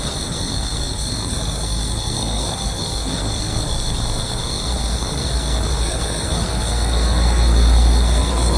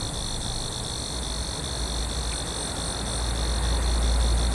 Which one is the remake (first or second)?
first